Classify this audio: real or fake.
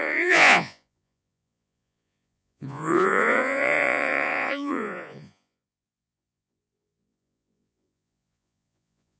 fake